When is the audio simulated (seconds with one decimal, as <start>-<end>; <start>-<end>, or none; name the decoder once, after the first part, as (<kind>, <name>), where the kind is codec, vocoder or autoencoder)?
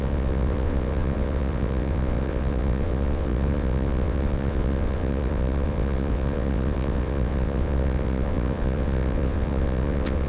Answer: 0.0-10.3 (vocoder, WaveNeXt)